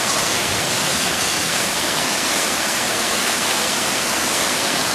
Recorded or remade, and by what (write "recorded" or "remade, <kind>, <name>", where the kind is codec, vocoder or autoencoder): remade, codec, SNAC